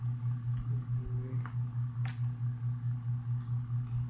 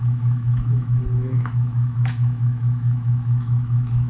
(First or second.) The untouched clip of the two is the first